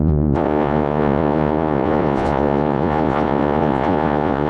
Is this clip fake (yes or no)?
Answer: yes